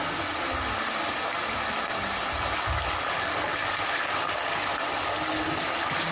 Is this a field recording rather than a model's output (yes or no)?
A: yes